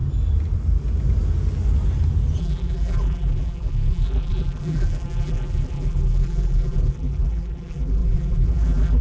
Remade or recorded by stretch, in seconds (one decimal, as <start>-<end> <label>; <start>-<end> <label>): 0.0-2.4 recorded; 2.4-9.0 remade